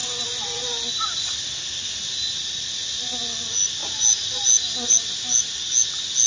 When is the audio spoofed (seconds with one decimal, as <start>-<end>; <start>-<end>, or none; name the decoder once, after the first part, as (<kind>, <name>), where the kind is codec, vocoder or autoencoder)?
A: none